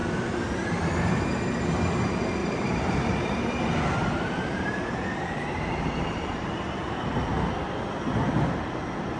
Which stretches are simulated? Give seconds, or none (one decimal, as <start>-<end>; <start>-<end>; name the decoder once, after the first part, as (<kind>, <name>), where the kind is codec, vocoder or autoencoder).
2.4-7.3 (vocoder, BigVGAN v2)